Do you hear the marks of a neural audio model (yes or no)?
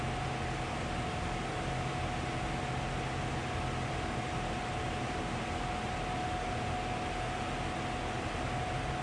no